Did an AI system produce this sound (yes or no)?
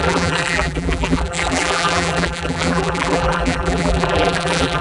yes